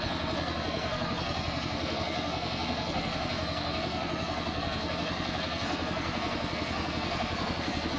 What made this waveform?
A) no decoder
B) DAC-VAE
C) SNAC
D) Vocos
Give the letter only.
C